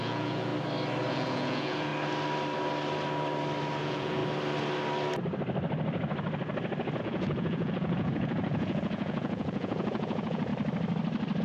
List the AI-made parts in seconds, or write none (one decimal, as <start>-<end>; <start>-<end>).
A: 0.0-0.5; 1.1-1.9; 3.8-4.2; 7.0-10.5